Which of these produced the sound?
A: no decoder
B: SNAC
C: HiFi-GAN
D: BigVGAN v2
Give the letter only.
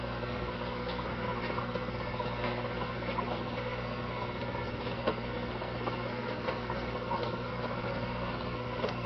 B